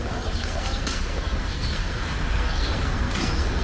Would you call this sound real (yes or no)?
no